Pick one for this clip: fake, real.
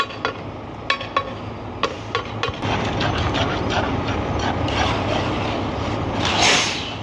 real